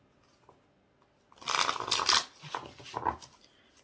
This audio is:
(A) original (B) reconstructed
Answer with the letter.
A